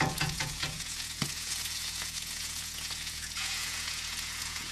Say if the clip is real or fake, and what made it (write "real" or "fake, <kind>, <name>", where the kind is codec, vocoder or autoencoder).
fake, vocoder, Vocos